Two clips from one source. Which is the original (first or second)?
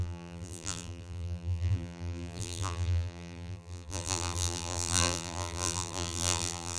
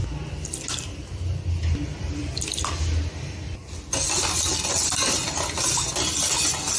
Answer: second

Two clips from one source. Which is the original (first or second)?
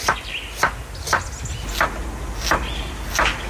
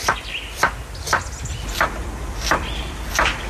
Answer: first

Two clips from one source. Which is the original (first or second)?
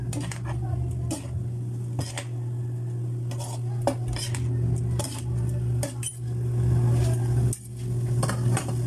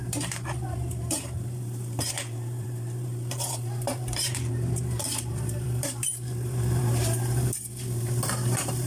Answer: first